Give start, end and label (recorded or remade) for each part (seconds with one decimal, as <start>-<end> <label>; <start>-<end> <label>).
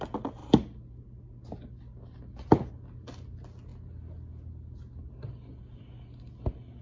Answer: 0.0-6.8 recorded